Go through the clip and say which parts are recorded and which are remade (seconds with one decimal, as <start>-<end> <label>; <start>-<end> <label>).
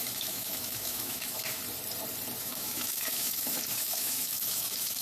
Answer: 0.0-1.6 remade; 1.6-2.4 recorded; 2.4-5.0 remade